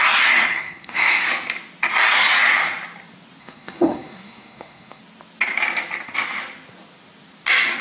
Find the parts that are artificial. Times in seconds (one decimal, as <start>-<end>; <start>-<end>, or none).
0.5-1.3; 3.4-5.0